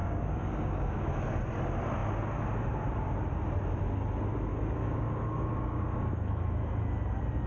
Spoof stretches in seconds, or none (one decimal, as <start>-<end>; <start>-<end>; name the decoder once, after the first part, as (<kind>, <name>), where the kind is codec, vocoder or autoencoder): 0.0-1.1 (codec, DAC); 4.5-6.4